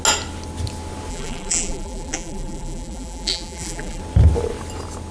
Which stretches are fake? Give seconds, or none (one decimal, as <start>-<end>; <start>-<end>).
1.1-4.0